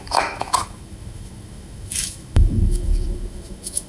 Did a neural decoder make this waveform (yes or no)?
yes